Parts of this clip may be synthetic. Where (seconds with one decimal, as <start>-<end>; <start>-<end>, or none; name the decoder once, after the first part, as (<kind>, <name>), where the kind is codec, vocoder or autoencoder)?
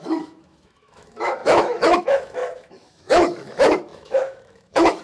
0.0-5.0 (autoencoder, DAC-VAE)